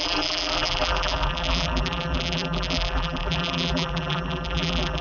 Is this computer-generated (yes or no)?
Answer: yes